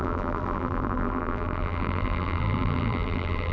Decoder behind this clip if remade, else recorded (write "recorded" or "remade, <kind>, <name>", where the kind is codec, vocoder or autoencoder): remade, vocoder, BigVGAN v2